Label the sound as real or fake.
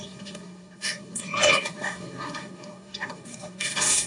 fake